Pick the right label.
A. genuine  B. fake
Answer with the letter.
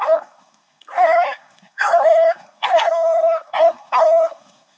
B